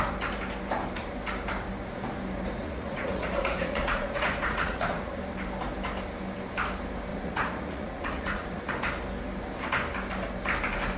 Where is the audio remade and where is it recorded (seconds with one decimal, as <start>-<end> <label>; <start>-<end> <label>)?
0.0-2.6 recorded; 2.6-5.1 remade; 5.1-7.1 recorded; 7.1-8.7 remade; 8.7-11.0 recorded